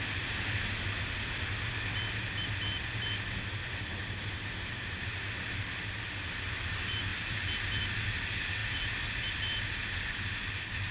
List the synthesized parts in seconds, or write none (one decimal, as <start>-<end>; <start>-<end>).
none